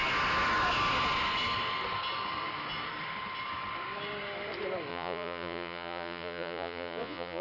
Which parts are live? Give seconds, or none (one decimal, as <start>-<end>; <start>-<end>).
0.0-4.9